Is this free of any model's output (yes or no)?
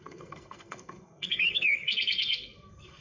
no